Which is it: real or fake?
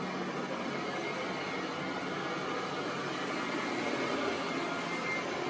real